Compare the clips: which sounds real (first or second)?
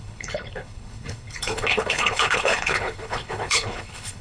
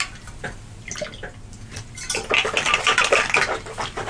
second